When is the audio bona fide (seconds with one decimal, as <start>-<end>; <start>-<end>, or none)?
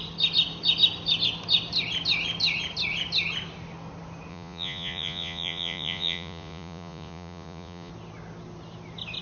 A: 0.0-4.3; 7.9-9.2